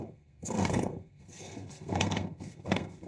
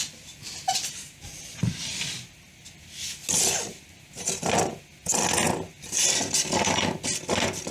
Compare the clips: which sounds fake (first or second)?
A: first